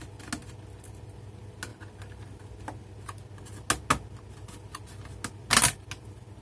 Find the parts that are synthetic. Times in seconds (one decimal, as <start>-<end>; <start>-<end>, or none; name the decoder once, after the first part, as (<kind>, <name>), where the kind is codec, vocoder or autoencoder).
none